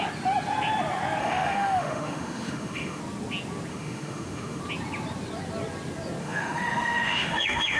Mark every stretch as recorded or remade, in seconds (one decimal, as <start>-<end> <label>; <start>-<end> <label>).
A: 0.0-1.2 recorded; 1.2-3.0 remade; 3.0-3.7 recorded; 3.7-4.6 remade; 4.6-6.2 recorded; 6.2-7.8 remade